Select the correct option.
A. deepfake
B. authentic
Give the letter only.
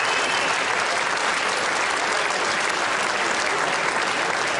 B